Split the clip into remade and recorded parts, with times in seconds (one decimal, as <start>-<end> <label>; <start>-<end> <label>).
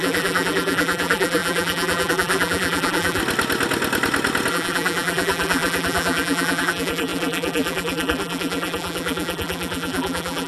0.0-3.2 remade; 3.2-4.5 recorded; 4.5-10.5 remade